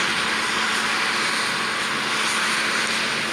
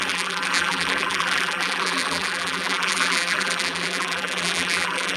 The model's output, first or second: second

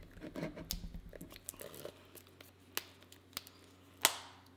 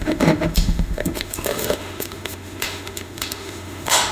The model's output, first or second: second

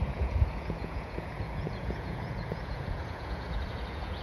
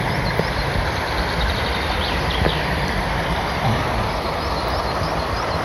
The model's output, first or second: first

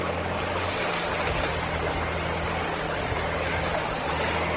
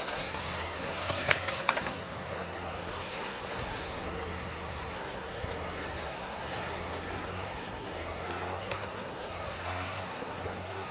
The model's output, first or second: second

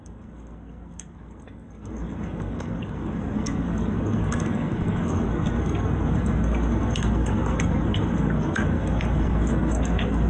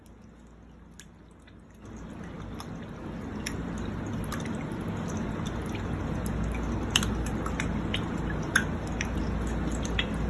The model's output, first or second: first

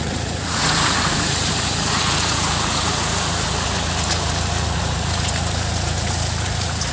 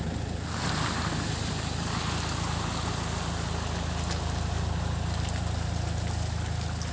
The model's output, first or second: first